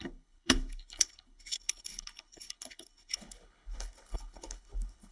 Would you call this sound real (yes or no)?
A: no